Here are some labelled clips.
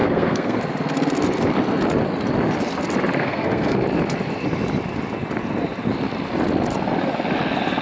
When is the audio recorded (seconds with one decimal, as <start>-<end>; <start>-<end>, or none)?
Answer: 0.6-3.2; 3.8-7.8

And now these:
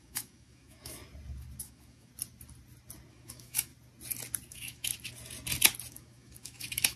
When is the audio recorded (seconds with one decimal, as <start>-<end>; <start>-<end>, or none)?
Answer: 1.0-1.6; 2.1-3.1; 3.7-4.5; 4.9-5.9

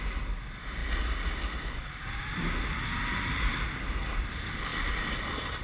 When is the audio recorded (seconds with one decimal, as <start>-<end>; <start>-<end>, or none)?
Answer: 0.0-5.6

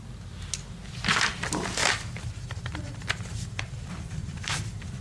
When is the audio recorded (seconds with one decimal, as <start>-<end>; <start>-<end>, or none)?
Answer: 0.0-1.8

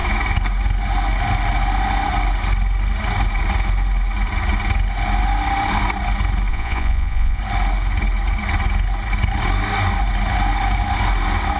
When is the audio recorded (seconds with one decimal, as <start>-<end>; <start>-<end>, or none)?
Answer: 0.0-6.5; 7.4-11.6